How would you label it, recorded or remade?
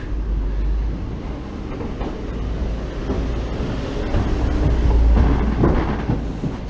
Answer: recorded